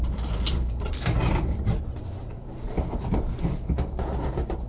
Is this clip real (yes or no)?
no